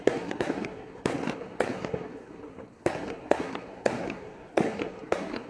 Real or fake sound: fake